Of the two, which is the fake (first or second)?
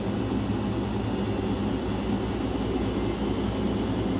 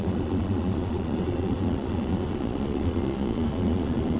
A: second